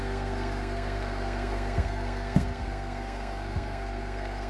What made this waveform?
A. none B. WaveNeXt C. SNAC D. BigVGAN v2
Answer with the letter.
C